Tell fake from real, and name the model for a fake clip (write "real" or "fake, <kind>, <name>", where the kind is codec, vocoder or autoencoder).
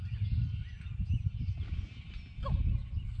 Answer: real